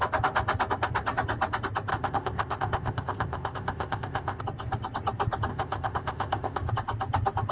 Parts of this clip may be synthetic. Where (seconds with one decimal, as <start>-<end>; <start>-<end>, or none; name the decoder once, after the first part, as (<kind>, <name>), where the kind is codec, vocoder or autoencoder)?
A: 1.9-4.4 (codec, ZipCodec); 5.5-6.7